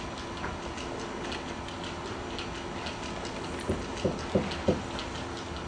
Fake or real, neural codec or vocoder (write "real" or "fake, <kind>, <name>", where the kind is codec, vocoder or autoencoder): real